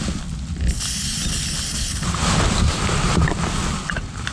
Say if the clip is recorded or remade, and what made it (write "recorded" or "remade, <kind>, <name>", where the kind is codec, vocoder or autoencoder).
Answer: recorded